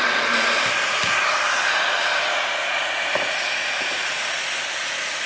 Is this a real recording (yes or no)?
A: yes